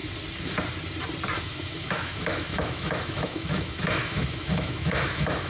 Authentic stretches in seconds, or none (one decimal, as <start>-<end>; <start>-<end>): 0.0-1.4